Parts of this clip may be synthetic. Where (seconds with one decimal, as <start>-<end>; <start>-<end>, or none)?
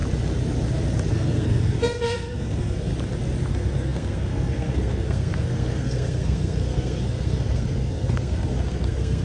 1.1-2.9; 3.5-9.2